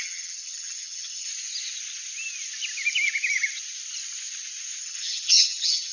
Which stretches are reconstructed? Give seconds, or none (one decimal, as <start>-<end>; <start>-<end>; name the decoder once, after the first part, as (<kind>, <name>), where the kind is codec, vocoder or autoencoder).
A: 0.0-1.3 (vocoder, HiFi-GAN); 4.8-5.9